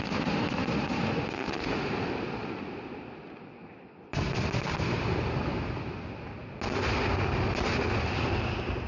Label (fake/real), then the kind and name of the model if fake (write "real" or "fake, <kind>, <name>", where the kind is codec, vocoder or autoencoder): real